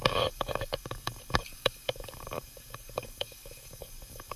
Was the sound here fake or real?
fake